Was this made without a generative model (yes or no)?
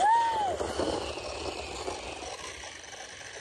yes